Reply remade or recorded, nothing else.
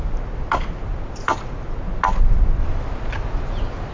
recorded